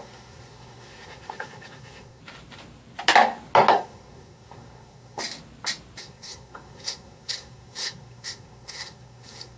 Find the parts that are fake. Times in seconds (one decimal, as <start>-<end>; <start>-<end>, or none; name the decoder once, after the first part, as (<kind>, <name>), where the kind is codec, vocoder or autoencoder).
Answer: 0.0-2.2 (codec, SNAC); 3.7-5.2; 6.0-9.6